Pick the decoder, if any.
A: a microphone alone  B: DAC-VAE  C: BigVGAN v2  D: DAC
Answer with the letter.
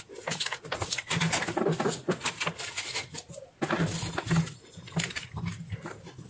A